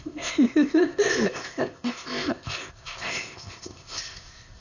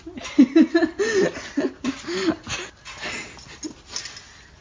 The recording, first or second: second